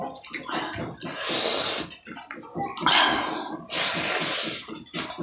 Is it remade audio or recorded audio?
recorded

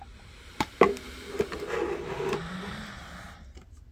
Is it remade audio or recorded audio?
recorded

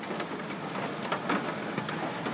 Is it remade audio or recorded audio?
recorded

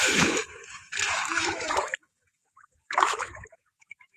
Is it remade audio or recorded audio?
remade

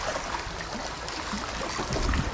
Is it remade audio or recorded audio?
recorded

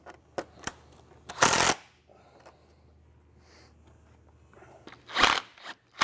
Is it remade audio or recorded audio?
recorded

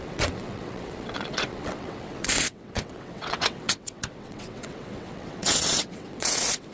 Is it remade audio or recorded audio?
remade